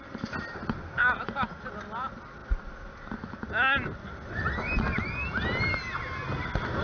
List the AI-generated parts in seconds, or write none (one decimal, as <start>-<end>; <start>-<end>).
none